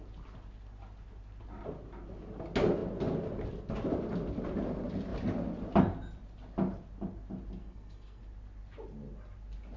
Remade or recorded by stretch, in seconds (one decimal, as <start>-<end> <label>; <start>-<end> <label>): 0.0-7.6 recorded; 7.6-8.2 remade; 8.2-9.8 recorded